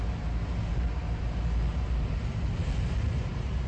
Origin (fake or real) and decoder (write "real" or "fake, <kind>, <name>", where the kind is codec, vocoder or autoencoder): real